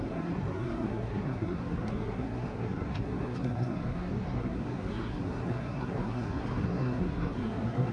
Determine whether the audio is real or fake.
fake